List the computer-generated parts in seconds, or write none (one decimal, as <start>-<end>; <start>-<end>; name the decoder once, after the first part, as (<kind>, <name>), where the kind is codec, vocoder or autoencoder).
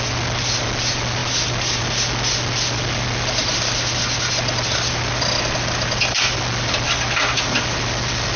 0.0-8.4 (vocoder, BigVGAN v2)